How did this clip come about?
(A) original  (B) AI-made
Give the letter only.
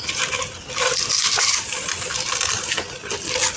A